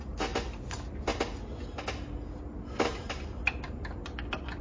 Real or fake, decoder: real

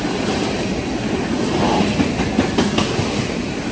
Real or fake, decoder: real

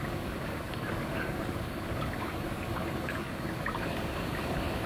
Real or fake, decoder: fake, codec, DAC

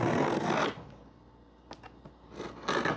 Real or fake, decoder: real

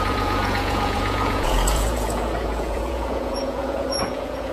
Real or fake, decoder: fake, vocoder, Vocos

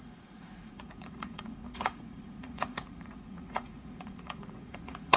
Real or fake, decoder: fake, vocoder, Vocos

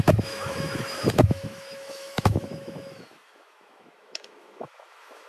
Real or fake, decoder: fake, autoencoder, DAC-VAE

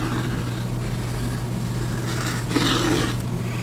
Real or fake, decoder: real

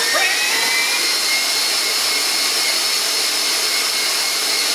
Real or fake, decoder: real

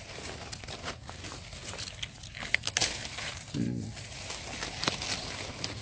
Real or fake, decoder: real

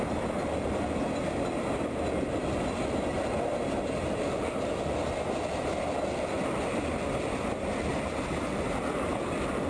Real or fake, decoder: real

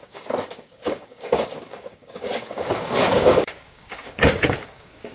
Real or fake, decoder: fake, codec, DAC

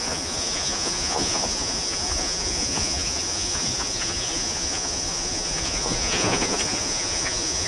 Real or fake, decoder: fake, vocoder, Vocos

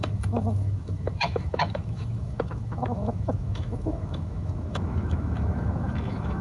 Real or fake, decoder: fake, autoencoder, DAC-VAE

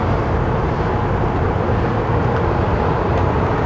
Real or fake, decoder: real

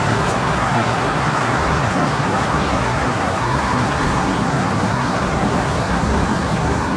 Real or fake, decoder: fake, codec, SNAC